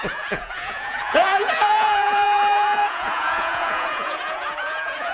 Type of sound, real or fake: fake